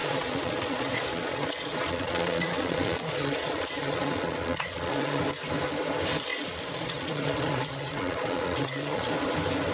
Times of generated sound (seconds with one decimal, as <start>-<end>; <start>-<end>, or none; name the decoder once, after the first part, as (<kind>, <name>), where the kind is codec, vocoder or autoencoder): 0.0-5.2 (vocoder, Vocos); 6.3-9.1